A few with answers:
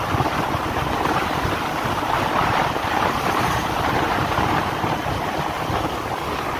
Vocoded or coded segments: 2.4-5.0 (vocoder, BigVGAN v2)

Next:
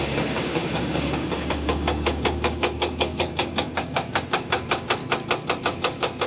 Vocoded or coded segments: 0.0-5.0 (codec, DAC); 5.6-6.3

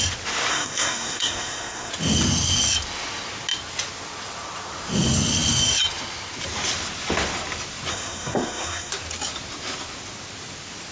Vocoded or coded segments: 0.5-1.9 (codec, SNAC); 7.9-8.9

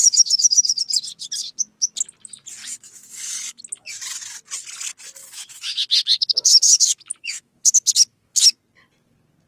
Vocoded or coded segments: 0.0-0.8 (autoencoder, DAC-VAE); 2.6-3.6; 5.2-8.6

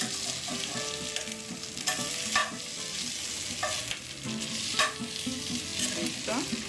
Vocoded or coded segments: none

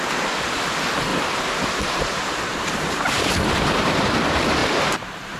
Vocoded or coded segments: 1.1-3.6 (vocoder, BigVGAN v2); 4.6-5.4